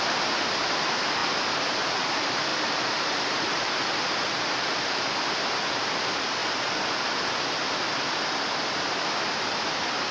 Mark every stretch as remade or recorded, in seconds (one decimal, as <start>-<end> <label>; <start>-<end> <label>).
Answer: 0.0-2.5 recorded; 2.5-3.7 remade; 3.7-10.1 recorded